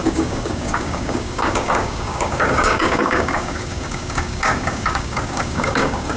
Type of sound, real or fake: fake